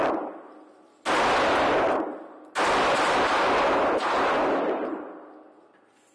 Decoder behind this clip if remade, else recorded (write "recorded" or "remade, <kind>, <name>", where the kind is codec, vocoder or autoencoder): recorded